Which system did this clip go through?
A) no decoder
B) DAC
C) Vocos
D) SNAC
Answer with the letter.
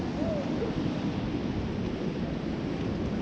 A